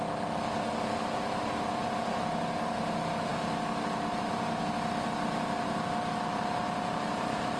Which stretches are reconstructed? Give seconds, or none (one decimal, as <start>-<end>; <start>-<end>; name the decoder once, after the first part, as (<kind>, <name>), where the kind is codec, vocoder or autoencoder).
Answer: none